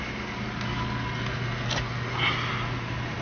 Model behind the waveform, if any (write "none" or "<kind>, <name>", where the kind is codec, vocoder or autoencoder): none